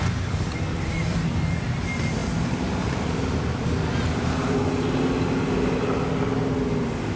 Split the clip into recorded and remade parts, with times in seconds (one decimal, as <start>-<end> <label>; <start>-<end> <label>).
0.0-7.2 recorded